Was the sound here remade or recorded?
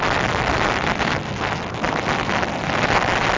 recorded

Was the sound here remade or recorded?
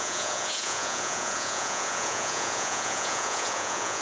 remade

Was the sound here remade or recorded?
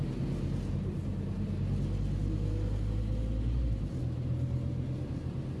recorded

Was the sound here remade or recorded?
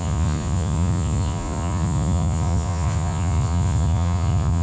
remade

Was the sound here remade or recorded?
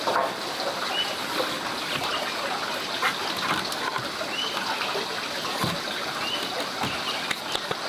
recorded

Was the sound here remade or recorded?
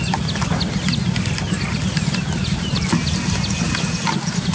recorded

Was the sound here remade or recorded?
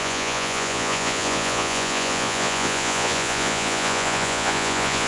remade